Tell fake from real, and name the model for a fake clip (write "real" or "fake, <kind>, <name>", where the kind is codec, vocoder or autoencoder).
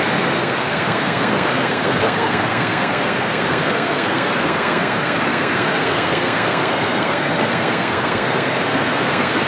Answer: fake, codec, SNAC